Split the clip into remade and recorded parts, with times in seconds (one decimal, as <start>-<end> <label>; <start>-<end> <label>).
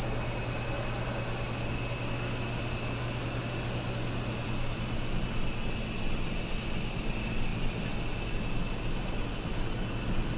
0.0-10.4 recorded